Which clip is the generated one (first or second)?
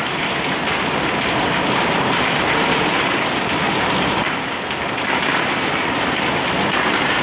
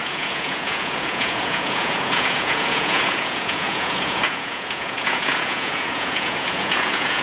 second